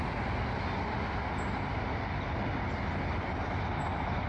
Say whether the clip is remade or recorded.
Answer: recorded